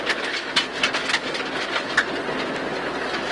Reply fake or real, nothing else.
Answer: real